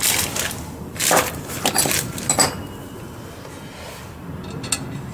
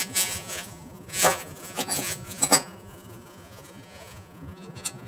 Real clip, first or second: first